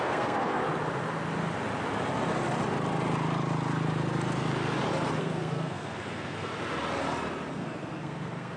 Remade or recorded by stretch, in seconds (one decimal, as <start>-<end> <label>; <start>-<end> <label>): 0.0-0.6 remade; 0.6-5.2 recorded; 5.2-6.5 remade; 6.5-7.5 recorded; 7.5-8.6 remade